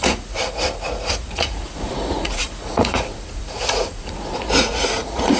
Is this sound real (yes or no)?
no